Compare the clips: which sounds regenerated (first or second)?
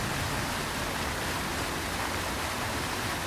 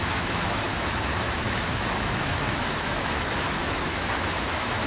second